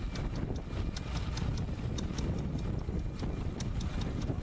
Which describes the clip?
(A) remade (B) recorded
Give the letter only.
B